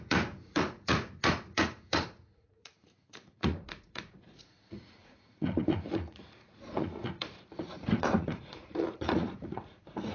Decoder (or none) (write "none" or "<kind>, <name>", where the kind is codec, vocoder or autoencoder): vocoder, Vocos